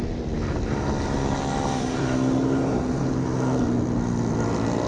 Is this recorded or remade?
recorded